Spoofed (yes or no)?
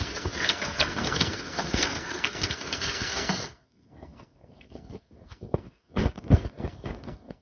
yes